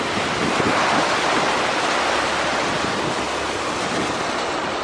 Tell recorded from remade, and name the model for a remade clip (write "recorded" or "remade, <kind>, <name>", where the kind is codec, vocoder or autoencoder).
recorded